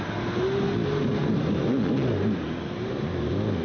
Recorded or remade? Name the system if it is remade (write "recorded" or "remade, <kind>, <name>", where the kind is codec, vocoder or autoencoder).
recorded